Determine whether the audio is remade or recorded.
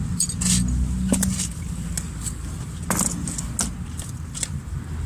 recorded